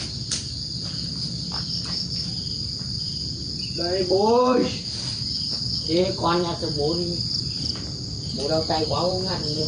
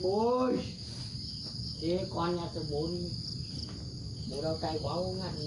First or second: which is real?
second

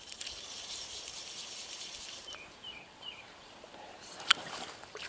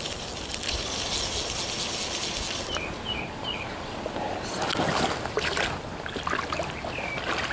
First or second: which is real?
second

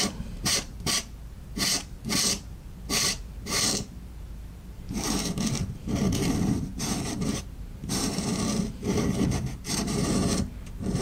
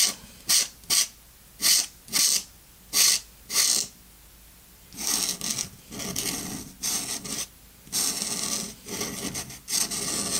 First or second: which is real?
second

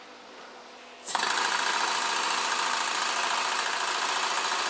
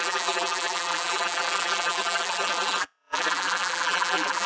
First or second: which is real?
first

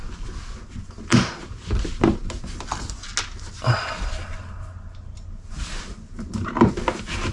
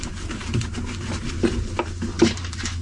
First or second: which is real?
first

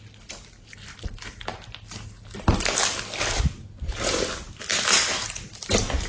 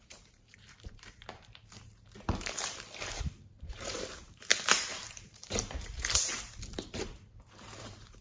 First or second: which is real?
first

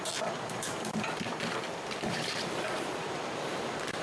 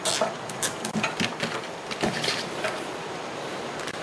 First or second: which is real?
second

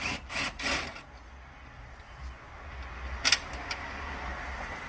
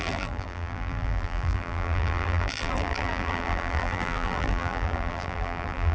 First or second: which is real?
first